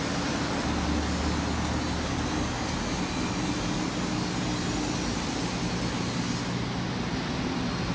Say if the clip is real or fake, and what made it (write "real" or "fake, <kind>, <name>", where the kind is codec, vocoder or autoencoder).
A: real